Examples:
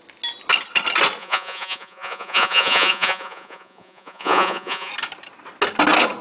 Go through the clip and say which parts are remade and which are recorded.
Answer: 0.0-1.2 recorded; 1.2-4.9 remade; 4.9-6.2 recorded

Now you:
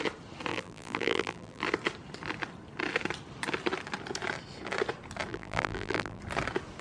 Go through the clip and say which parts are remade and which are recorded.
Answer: 0.0-0.5 recorded; 0.5-1.6 remade; 1.6-5.3 recorded; 5.3-6.2 remade; 6.2-6.8 recorded

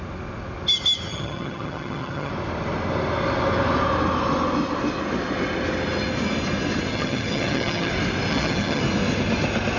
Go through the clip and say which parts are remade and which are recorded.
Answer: 0.0-1.1 recorded; 1.1-2.3 remade; 2.3-6.9 recorded; 6.9-7.9 remade; 7.9-8.3 recorded; 8.3-8.8 remade; 8.8-9.8 recorded

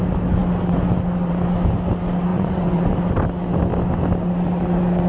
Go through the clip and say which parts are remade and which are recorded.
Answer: 0.0-2.3 recorded; 2.3-2.9 remade; 2.9-5.1 recorded

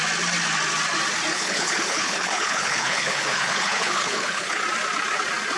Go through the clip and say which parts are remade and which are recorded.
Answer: 0.0-1.3 recorded; 1.3-4.6 remade; 4.6-5.6 recorded

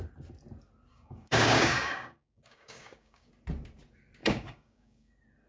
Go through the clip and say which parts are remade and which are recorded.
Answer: 0.0-0.9 recorded; 0.9-3.3 remade; 3.3-4.2 recorded; 4.2-5.1 remade; 5.1-5.5 recorded